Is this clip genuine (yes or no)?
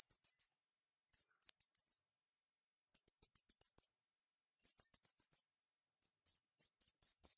yes